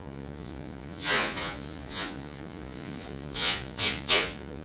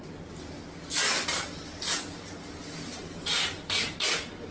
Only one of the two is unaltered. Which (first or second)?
second